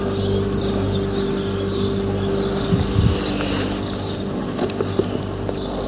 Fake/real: real